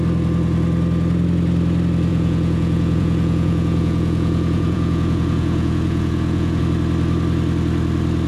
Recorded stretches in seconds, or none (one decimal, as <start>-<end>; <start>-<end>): 0.0-2.1; 6.6-8.3